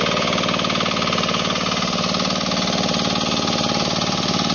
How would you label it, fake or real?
real